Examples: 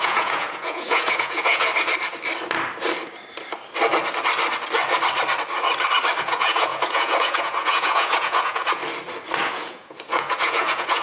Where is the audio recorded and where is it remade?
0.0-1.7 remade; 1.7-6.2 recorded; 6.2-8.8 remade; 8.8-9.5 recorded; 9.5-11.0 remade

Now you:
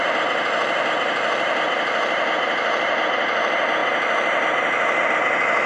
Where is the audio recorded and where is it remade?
0.0-5.7 recorded

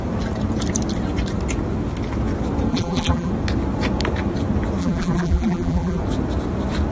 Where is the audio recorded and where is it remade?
0.0-2.7 recorded; 2.7-3.3 remade; 3.3-4.8 recorded; 4.8-6.0 remade; 6.0-6.9 recorded

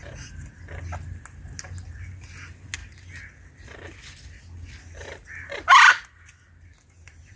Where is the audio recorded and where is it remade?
0.0-7.4 recorded

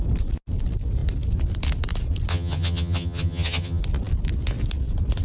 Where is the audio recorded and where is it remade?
0.0-2.3 recorded; 2.3-3.8 remade; 3.8-5.2 recorded